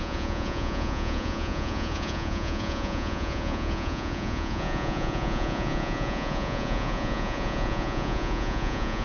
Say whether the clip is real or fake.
fake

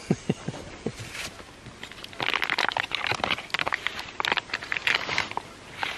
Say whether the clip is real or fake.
real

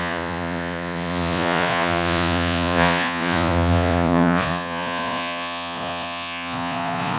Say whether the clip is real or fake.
fake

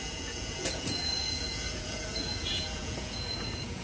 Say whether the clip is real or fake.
fake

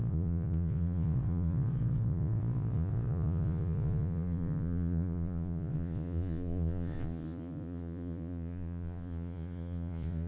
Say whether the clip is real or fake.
fake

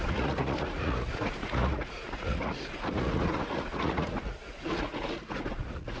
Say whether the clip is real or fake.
fake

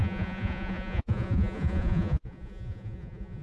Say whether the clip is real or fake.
fake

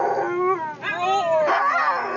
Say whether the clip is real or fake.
real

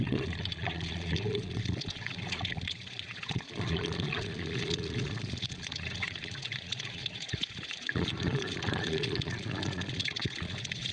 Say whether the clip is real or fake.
fake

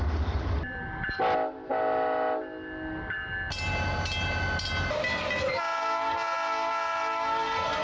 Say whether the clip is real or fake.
real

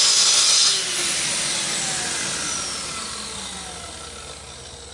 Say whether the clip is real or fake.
real